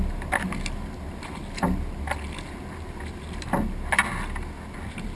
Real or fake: real